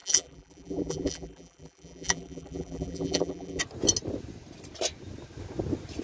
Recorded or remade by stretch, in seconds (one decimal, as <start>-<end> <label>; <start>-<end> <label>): 0.0-3.6 remade; 3.6-6.0 recorded